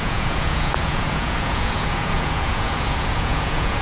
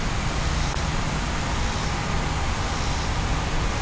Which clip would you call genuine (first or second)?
second